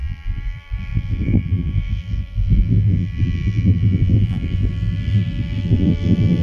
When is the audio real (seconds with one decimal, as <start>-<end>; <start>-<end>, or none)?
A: none